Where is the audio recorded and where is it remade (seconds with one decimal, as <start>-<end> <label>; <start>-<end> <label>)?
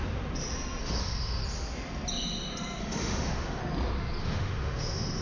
0.0-0.8 recorded; 0.8-1.4 remade; 1.4-2.8 recorded; 2.8-3.6 remade; 3.6-4.2 recorded; 4.2-5.2 remade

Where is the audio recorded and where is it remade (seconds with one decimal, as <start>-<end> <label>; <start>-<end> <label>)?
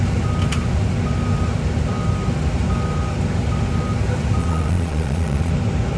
0.0-4.4 recorded; 4.4-5.5 remade; 5.5-6.0 recorded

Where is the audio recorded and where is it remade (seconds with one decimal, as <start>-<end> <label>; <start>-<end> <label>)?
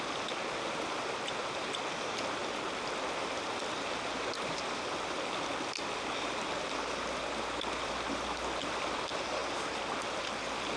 0.0-10.8 recorded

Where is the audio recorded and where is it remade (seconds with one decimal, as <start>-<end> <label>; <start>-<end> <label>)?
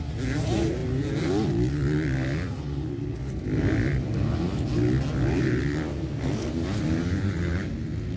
0.0-5.9 recorded; 5.9-6.5 remade; 6.5-8.2 recorded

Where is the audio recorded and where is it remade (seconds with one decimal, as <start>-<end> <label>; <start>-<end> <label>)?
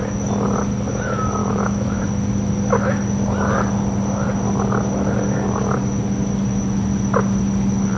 0.0-1.4 recorded; 1.4-2.0 remade; 2.0-8.0 recorded